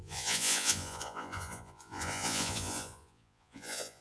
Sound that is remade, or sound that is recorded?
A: remade